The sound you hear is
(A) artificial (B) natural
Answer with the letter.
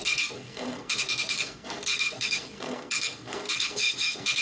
A